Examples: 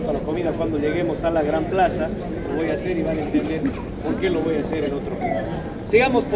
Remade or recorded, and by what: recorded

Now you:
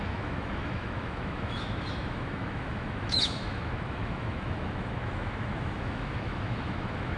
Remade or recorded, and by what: remade, autoencoder, DAC-VAE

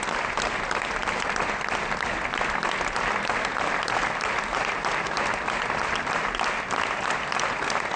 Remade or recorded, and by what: recorded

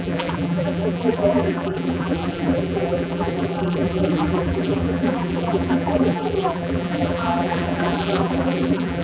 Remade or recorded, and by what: remade, vocoder, BigVGAN v2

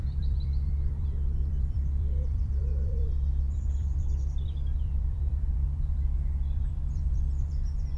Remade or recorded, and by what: remade, vocoder, BigVGAN v2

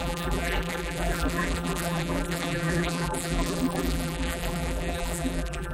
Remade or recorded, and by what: remade, vocoder, BigVGAN v2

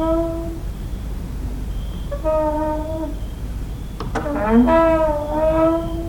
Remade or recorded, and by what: remade, vocoder, BigVGAN v2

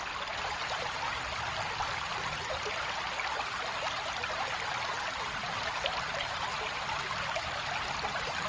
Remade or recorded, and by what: recorded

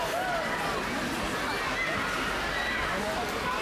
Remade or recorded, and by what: recorded